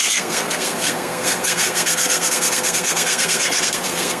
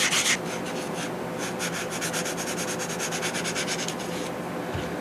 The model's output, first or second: first